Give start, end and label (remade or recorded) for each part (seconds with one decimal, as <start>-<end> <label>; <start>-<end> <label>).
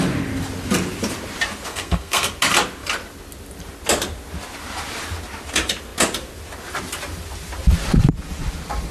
0.0-1.7 recorded; 1.7-2.3 remade; 2.3-8.9 recorded